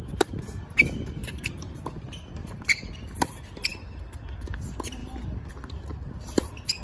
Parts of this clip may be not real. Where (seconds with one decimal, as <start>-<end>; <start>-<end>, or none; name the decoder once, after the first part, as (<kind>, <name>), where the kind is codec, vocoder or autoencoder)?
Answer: 1.2-1.8 (vocoder, BigVGAN v2); 2.4-2.9; 3.7-4.2; 5.0-5.5